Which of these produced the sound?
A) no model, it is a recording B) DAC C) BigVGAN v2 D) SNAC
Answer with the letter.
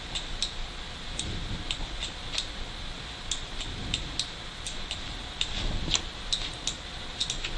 A